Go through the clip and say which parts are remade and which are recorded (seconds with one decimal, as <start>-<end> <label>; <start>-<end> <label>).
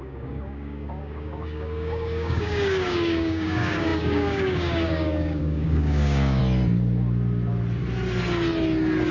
0.0-6.4 remade; 6.4-9.1 recorded